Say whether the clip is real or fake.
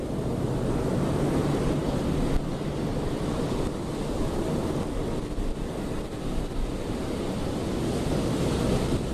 real